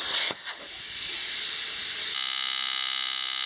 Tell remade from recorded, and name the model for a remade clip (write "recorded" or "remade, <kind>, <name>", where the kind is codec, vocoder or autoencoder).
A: recorded